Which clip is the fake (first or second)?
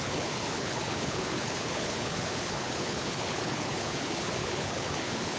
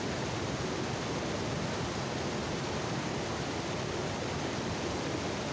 first